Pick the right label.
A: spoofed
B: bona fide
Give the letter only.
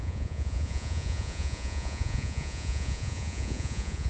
A